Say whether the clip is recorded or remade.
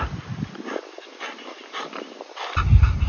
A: recorded